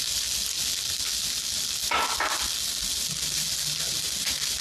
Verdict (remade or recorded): recorded